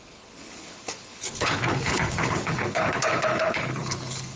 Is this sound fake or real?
fake